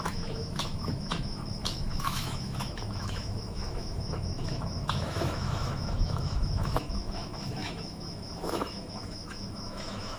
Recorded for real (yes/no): no